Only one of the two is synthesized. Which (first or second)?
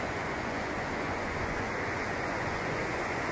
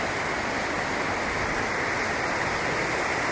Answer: first